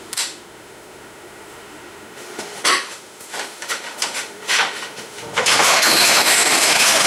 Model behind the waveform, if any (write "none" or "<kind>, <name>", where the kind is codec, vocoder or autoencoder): autoencoder, DAC-VAE